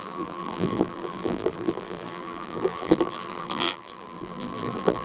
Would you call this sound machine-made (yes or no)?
yes